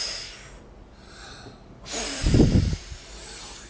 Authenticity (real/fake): real